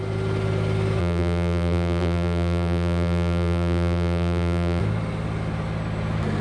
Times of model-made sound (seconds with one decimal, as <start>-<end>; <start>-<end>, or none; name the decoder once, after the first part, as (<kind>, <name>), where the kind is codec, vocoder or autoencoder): 1.0-4.8 (vocoder, BigVGAN v2)